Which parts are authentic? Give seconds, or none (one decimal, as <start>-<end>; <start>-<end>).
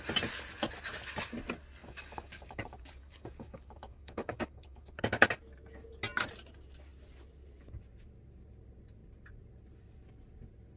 0.0-1.8; 4.9-10.8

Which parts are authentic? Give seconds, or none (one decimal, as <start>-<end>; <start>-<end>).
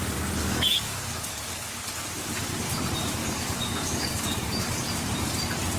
0.0-0.4; 1.7-3.2; 4.8-5.8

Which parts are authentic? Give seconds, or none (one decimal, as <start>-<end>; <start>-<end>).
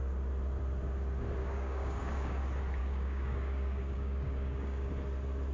0.0-1.4; 2.4-2.8; 4.9-5.5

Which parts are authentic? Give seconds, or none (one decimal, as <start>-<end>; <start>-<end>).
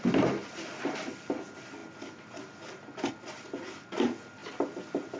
0.0-5.2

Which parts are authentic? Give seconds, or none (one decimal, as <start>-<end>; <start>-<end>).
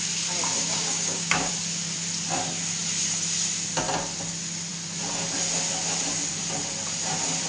0.0-0.6; 1.5-7.5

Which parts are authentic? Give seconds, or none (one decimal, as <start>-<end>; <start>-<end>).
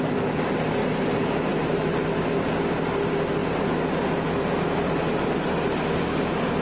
0.0-6.6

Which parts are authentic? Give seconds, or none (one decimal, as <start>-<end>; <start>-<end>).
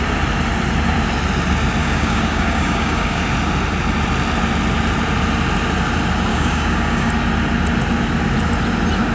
0.0-1.8; 3.2-6.3; 7.1-9.1